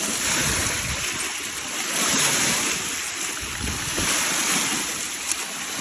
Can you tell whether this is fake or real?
real